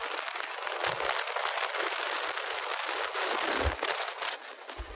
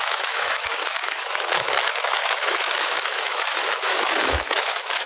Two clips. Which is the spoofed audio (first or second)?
second